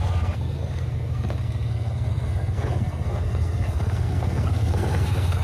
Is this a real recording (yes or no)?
no